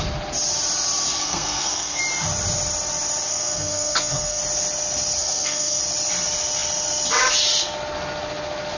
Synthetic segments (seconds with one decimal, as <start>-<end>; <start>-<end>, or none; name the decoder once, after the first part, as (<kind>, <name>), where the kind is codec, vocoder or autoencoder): 1.2-2.0 (codec, SNAC); 3.3-4.4; 5.2-5.8

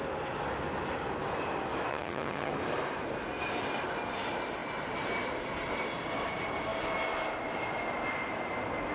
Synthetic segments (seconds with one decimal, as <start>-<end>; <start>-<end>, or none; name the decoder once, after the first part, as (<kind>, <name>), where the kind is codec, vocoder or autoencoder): 1.9-2.5 (vocoder, HiFi-GAN)

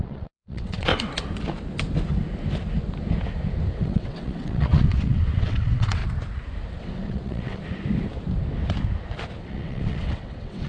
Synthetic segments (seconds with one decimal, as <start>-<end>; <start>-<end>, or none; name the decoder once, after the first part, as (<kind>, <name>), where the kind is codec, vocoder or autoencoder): 0.0-0.9 (vocoder, WaveNeXt); 3.7-6.0; 6.8-7.6; 9.4-10.7

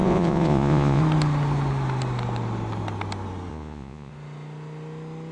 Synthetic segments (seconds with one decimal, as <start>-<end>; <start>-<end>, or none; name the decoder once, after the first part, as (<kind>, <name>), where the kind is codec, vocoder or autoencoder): 0.0-1.0 (vocoder, Vocos); 3.5-4.1

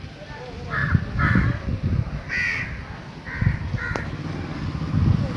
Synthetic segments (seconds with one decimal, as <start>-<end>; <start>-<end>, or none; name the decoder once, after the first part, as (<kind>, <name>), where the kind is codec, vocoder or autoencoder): none

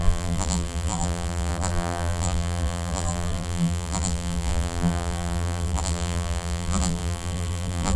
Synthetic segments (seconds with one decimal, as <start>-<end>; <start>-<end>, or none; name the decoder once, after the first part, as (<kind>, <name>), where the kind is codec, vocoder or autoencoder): 0.0-8.0 (vocoder, BigVGAN v2)